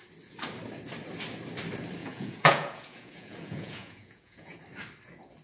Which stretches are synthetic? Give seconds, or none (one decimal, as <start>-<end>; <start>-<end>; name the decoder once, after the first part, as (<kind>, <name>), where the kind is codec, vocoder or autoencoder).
2.0-4.6 (vocoder, Vocos)